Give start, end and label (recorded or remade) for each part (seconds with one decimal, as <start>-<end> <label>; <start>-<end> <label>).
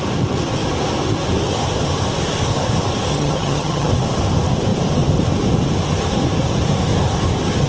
0.0-3.1 recorded; 3.1-3.9 remade; 3.9-7.7 recorded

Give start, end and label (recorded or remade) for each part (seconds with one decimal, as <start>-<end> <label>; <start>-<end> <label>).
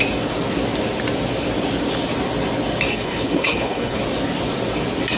0.0-2.9 recorded; 2.9-4.0 remade; 4.0-5.2 recorded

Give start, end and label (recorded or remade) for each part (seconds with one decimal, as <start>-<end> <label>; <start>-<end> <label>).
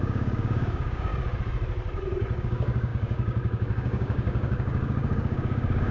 0.0-1.1 remade; 1.1-2.4 recorded; 2.4-5.9 remade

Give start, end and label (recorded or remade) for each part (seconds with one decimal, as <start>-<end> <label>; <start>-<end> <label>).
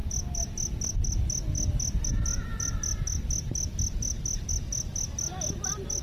0.0-6.0 recorded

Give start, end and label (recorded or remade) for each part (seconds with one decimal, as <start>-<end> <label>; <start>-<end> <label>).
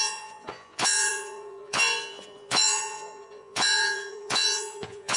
0.0-5.2 remade